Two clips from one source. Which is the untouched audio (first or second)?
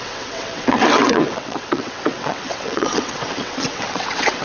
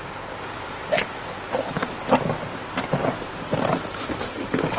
second